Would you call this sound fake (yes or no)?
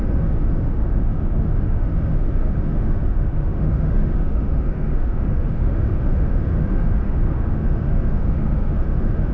yes